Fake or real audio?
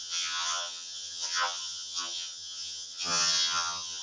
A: fake